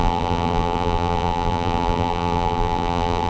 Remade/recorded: remade